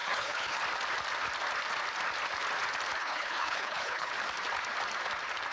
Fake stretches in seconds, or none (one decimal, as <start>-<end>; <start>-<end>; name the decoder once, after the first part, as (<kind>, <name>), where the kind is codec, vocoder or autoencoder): 0.0-0.6 (codec, HILCodec); 3.0-4.1